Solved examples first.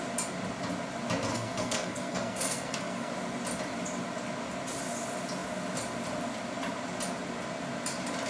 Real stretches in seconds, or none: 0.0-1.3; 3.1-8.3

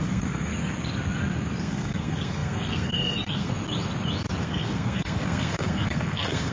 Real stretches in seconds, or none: 0.5-1.6; 3.5-4.4

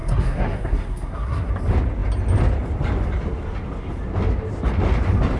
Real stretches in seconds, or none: 1.5-5.4

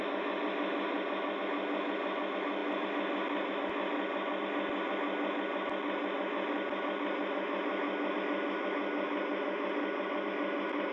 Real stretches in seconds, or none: 0.0-10.9

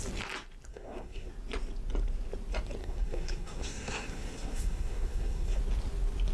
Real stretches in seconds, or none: 0.0-0.7; 1.3-2.8; 5.6-6.3